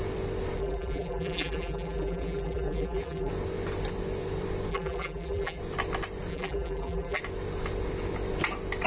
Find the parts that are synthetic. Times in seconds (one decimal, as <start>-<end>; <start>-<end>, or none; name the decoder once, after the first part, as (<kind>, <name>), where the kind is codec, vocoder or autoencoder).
0.6-3.3 (vocoder, BigVGAN v2); 4.7-5.6; 6.3-7.2